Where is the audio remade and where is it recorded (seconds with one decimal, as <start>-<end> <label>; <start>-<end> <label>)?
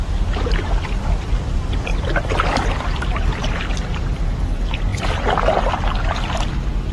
0.0-1.9 remade; 1.9-2.5 recorded; 2.5-4.9 remade; 4.9-5.7 recorded; 5.7-6.9 remade